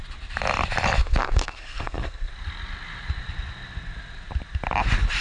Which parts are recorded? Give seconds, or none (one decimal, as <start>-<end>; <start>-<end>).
0.0-1.0; 2.3-5.2